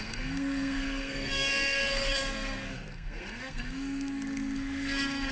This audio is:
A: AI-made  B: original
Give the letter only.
A